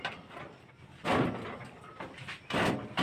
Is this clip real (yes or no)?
yes